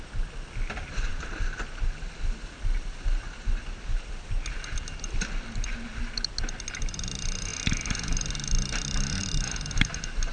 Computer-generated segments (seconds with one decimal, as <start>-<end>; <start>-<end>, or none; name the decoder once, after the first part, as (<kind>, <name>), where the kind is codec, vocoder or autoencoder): none